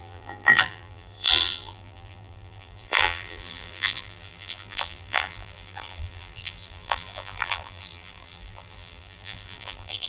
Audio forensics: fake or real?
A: fake